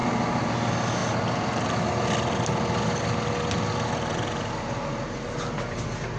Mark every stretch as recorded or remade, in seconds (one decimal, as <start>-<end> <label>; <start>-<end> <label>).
0.0-0.5 remade; 0.5-6.2 recorded